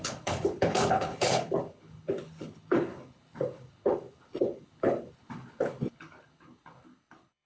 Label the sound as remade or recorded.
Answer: remade